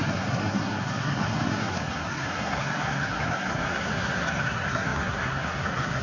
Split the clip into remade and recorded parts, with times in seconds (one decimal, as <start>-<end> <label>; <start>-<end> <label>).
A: 0.0-6.0 remade